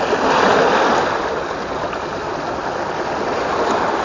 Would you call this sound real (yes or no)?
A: yes